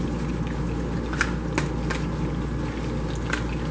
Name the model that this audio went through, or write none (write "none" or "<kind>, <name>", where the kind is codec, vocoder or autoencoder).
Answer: none